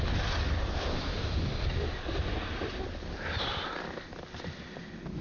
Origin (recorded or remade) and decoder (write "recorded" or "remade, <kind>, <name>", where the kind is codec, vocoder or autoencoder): recorded